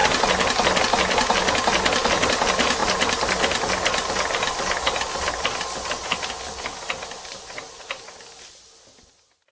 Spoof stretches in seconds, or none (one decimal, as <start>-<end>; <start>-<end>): none